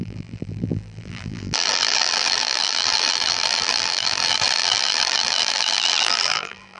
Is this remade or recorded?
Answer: remade